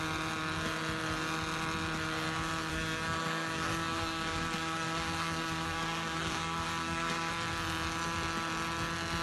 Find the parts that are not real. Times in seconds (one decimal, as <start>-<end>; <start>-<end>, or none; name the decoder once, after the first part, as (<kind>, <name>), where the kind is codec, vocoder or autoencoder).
2.7-7.3 (codec, SNAC)